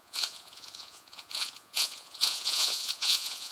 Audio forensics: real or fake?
fake